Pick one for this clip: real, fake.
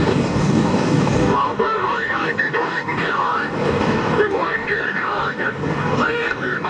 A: fake